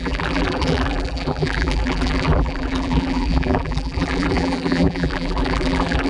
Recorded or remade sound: remade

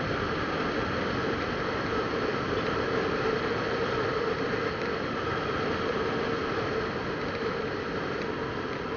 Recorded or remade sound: remade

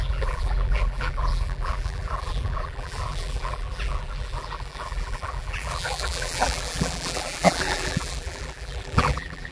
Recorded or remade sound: remade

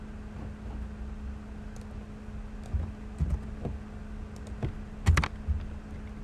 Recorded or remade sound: recorded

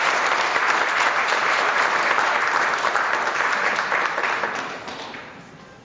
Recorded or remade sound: remade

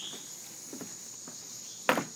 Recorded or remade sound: recorded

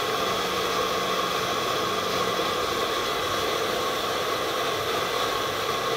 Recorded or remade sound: recorded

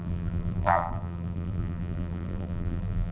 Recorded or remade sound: remade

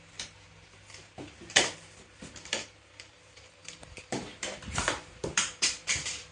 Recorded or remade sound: remade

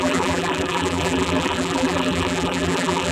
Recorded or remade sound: remade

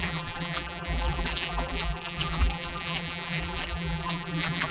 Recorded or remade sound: remade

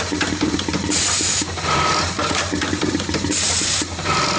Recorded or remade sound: remade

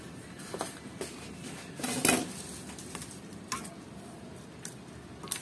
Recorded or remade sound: recorded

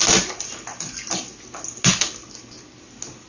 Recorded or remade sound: recorded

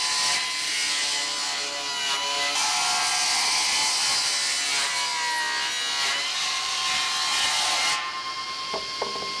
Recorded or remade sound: recorded